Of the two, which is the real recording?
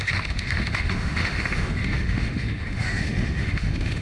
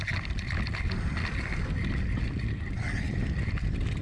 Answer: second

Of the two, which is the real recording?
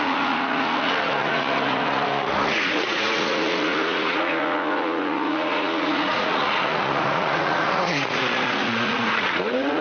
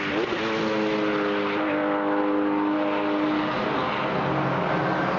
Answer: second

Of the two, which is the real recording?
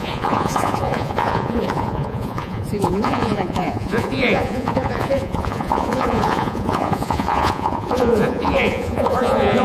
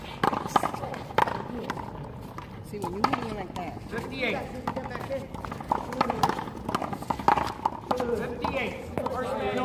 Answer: second